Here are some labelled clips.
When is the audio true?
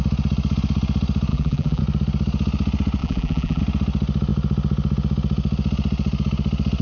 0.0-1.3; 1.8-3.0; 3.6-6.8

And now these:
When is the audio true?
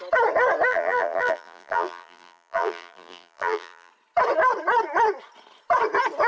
0.0-0.7; 3.9-6.3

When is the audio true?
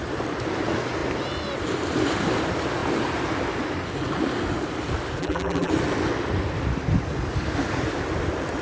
0.0-5.2; 5.7-8.6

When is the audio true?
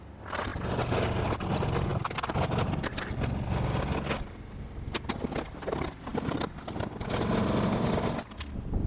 0.0-8.9